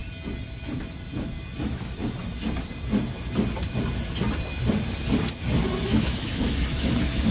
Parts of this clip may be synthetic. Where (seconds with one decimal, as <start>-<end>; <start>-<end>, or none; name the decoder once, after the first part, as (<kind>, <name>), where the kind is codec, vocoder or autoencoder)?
1.6-2.0 (autoencoder, DAC-VAE); 5.6-7.3